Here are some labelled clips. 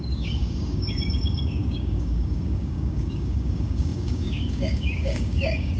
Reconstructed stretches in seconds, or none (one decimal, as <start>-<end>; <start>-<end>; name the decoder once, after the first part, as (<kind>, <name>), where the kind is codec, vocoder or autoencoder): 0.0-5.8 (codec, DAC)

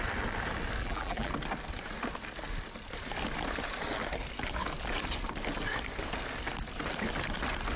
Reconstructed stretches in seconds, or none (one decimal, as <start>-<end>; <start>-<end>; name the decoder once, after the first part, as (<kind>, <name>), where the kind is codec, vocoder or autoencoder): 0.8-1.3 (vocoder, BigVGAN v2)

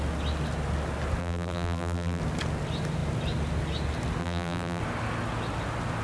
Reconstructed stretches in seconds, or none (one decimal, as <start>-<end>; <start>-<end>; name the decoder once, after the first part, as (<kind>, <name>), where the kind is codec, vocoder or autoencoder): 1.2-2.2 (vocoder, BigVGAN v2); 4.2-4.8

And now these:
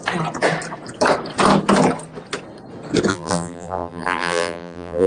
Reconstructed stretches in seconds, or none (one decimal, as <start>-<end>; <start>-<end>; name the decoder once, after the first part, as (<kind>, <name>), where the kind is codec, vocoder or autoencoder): 3.1-5.1 (vocoder, BigVGAN v2)

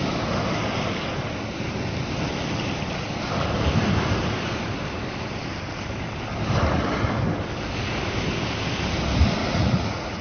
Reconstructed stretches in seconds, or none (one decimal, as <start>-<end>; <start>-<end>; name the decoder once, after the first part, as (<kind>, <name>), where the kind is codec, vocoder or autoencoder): 9.4-10.2 (vocoder, Vocos)

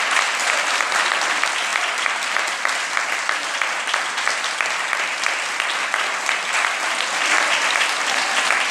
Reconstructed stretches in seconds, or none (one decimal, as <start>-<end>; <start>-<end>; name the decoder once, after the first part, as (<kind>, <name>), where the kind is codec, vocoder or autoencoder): 1.7-2.5 (vocoder, BigVGAN v2)

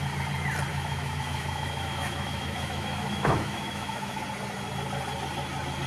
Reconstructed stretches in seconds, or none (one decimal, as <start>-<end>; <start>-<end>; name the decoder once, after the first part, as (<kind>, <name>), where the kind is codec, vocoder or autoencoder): 0.7-4.2 (autoencoder, DAC-VAE)

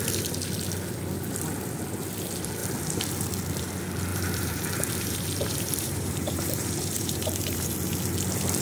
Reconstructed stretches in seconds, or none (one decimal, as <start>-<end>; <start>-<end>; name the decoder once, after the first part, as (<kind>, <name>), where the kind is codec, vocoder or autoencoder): 4.1-7.7 (vocoder, BigVGAN v2)